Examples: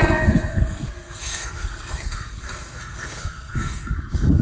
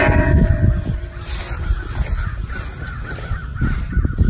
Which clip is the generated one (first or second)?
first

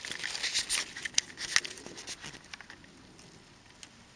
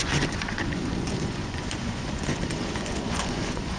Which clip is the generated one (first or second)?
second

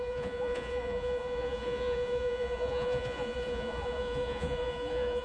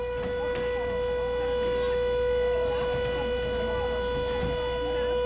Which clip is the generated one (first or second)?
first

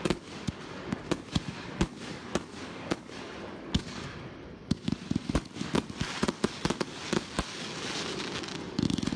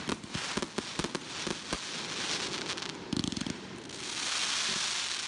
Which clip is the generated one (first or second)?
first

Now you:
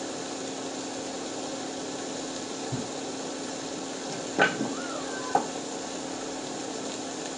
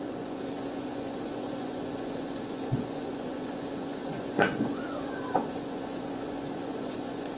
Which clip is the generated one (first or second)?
second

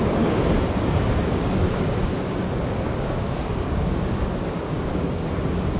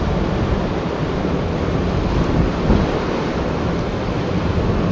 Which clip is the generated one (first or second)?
first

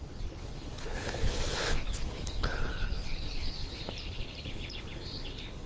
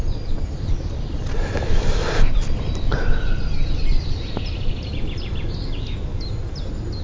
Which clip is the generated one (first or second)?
first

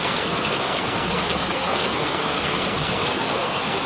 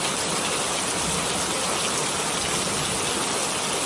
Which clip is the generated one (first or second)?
first